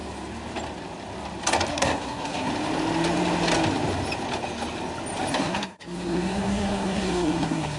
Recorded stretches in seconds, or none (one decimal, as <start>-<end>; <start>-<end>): 0.0-1.7; 2.5-5.3